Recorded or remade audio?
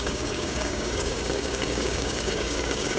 remade